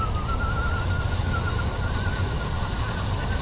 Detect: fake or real real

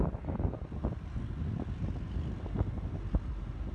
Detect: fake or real real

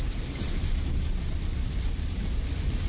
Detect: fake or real real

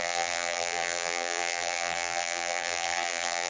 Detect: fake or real fake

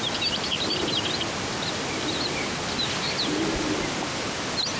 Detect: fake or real real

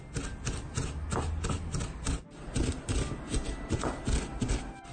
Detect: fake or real real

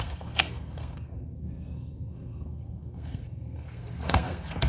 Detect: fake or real fake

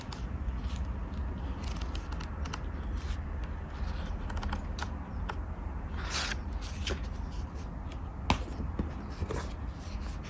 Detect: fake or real real